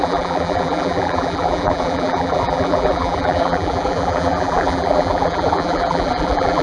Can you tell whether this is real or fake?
fake